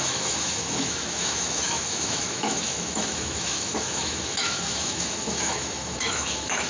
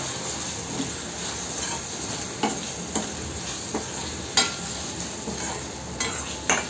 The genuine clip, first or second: second